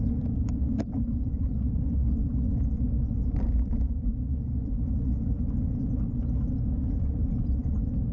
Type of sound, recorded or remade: remade